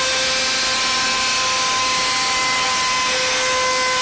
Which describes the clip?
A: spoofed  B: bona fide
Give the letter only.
B